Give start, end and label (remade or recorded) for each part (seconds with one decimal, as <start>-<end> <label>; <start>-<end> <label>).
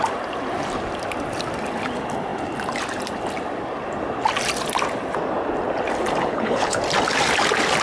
0.0-6.2 recorded; 6.2-6.8 remade; 6.8-7.8 recorded